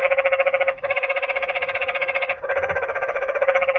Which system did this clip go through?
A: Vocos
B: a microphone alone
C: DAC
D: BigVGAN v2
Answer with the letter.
C